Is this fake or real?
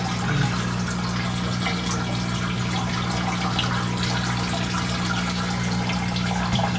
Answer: real